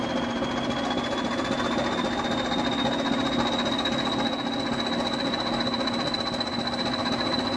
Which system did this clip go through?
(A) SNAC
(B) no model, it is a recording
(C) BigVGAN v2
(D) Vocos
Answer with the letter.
B